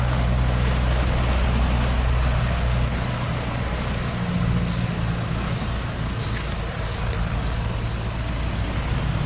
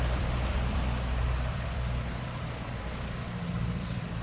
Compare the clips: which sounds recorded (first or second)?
first